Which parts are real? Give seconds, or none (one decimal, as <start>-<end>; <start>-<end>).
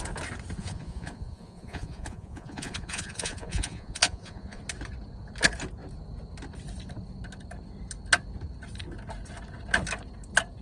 0.0-0.6; 4.6-10.6